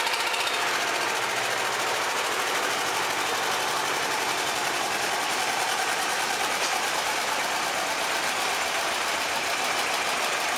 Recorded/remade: recorded